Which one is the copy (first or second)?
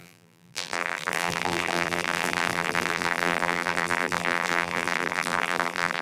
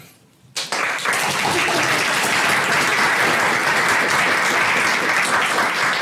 first